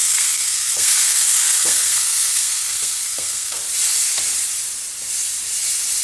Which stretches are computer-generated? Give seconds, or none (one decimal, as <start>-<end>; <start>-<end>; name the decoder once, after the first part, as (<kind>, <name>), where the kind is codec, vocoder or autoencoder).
0.0-3.6 (codec, SNAC)